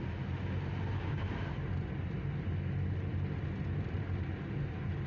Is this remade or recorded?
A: recorded